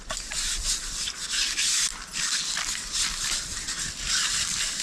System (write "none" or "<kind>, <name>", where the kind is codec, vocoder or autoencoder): none